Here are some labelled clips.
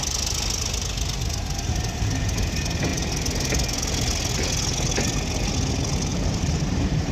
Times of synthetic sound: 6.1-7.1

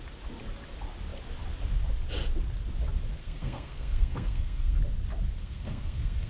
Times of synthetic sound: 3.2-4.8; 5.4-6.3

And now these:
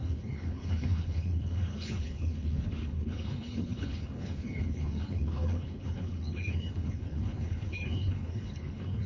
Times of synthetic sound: 0.0-9.1

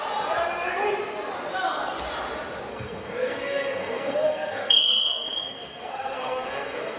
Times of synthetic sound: 2.7-7.0

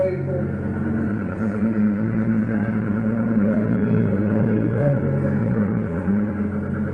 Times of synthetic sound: 1.1-5.0; 5.4-6.3

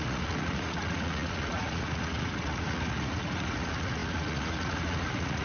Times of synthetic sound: 0.0-5.4